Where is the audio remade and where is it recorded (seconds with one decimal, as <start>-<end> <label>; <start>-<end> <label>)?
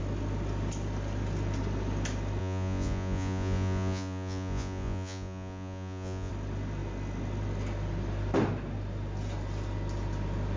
0.0-2.4 recorded; 2.4-6.3 remade; 6.3-10.6 recorded